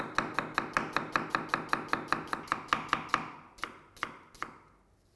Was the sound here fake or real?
real